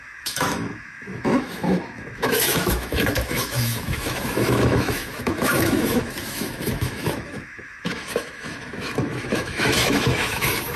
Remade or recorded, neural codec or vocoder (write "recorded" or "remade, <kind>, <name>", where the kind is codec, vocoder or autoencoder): remade, autoencoder, DAC-VAE